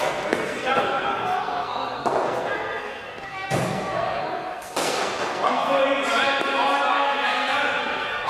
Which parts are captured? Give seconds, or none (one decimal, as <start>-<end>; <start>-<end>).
5.8-6.9